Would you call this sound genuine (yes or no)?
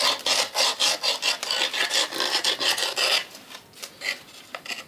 yes